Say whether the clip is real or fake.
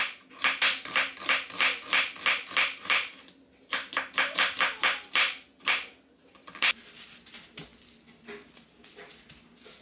real